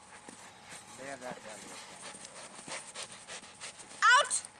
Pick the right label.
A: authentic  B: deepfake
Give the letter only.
A